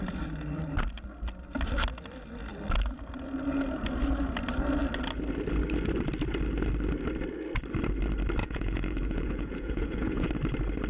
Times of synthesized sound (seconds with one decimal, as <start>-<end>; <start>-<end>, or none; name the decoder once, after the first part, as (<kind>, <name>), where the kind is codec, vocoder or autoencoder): 8.4-10.3 (vocoder, Vocos)

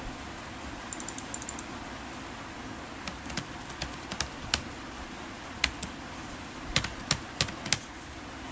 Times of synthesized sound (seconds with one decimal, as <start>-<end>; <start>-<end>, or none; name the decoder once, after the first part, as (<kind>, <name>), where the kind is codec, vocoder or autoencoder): 2.7-3.3 (vocoder, BigVGAN v2); 3.8-7.4